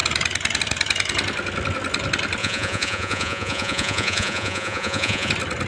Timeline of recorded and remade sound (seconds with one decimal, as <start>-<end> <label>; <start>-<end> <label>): 0.0-2.4 recorded; 2.4-5.3 remade; 5.3-5.7 recorded

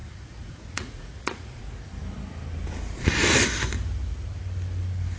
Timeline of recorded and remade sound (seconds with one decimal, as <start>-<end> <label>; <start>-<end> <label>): 0.0-1.6 remade; 1.6-5.2 recorded

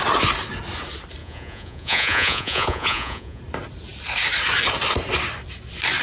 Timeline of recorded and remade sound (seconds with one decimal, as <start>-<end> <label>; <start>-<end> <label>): 0.0-1.2 recorded; 1.2-3.4 remade; 3.4-6.0 recorded